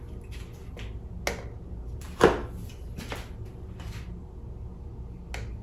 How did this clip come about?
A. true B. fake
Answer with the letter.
A